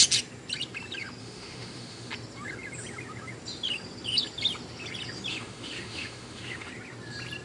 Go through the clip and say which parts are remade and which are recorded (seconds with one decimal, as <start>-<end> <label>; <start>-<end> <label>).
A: 0.0-1.2 recorded; 1.2-2.1 remade; 2.1-5.3 recorded; 5.3-6.7 remade; 6.7-7.4 recorded